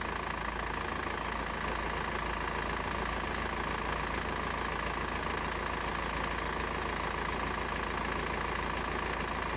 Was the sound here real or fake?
real